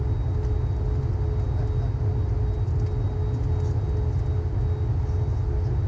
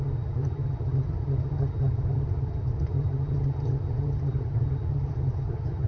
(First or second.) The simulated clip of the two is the second